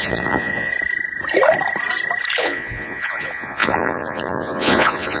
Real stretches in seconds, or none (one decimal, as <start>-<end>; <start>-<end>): 0.7-2.4